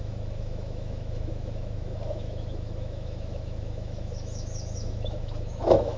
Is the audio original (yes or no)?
no